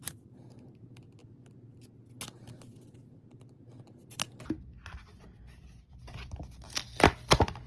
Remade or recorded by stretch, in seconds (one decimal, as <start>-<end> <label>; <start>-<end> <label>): 0.0-7.7 recorded